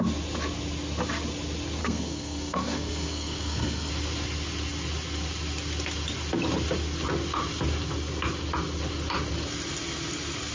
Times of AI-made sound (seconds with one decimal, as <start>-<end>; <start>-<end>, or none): 1.8-3.9